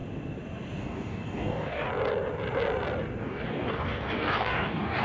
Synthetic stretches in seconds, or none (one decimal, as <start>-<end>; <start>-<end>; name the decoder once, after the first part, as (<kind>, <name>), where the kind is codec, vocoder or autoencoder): 0.8-1.9 (codec, DAC); 3.2-5.0